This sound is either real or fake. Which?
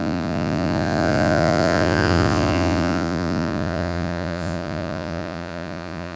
fake